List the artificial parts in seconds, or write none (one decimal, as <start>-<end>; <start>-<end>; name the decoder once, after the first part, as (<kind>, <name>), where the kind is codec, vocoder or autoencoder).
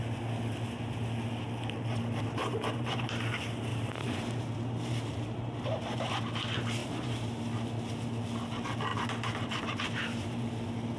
2.4-3.1 (vocoder, BigVGAN v2); 3.7-6.1; 6.8-7.5; 8.9-10.4